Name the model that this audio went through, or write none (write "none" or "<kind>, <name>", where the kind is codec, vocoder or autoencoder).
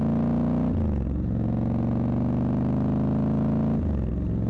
none